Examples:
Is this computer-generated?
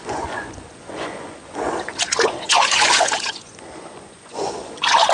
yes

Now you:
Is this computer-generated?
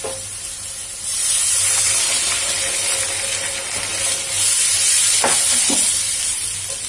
no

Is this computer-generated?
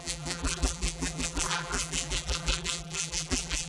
yes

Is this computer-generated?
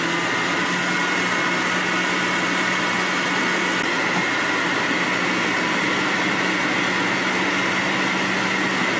no